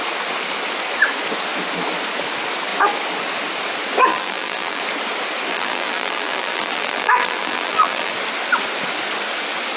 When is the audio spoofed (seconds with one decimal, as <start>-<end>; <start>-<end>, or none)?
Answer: 4.1-4.8; 5.5-8.1